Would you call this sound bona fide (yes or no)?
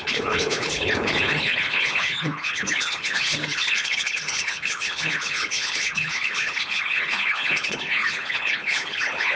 no